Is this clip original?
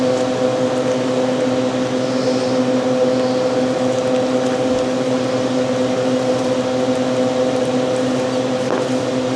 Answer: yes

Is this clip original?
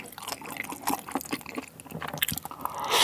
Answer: yes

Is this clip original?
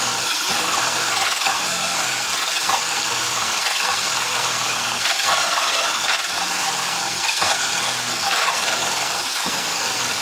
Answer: no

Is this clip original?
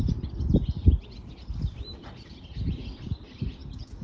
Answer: yes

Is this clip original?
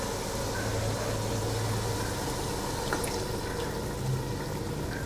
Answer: yes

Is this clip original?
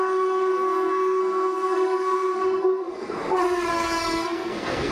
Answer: no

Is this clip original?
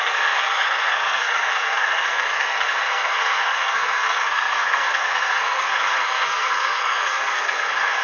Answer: no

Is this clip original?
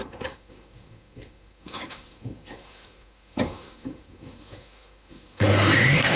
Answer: no